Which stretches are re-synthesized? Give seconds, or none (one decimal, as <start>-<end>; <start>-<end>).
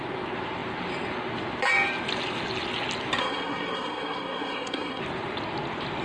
3.2-5.0